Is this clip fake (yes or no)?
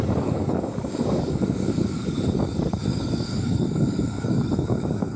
yes